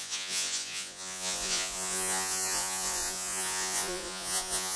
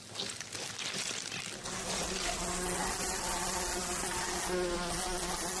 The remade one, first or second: first